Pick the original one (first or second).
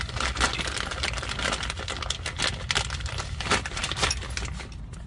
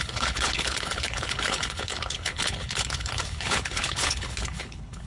first